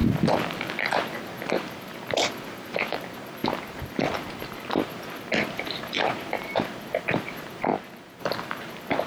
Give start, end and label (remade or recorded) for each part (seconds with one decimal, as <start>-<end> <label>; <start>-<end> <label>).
0.0-0.8 recorded; 0.8-7.7 remade; 7.7-8.2 recorded; 8.2-9.1 remade